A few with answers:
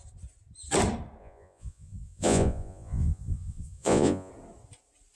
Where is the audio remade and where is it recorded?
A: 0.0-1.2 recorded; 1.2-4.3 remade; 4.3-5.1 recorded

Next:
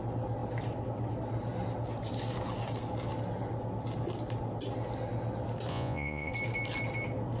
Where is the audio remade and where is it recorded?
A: 0.0-5.7 recorded; 5.7-6.3 remade; 6.3-7.4 recorded

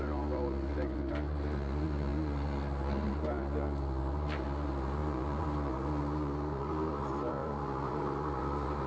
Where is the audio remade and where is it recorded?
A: 0.0-8.9 remade